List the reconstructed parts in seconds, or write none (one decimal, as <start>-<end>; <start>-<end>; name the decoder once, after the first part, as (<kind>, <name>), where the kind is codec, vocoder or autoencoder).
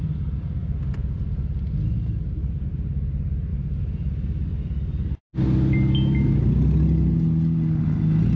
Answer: none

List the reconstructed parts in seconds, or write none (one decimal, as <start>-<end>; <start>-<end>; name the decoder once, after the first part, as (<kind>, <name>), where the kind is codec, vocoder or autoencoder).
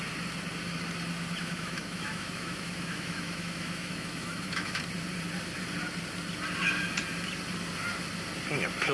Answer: 1.4-4.8 (autoencoder, DAC-VAE)